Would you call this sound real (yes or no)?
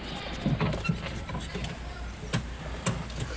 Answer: yes